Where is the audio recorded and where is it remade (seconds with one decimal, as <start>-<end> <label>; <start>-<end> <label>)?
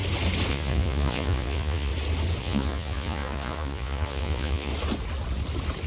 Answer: 0.0-0.5 recorded; 0.5-1.9 remade; 1.9-2.4 recorded; 2.4-4.7 remade; 4.7-5.9 recorded